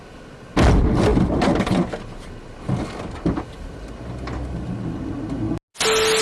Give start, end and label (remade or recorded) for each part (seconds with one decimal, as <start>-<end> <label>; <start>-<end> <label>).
0.0-6.2 recorded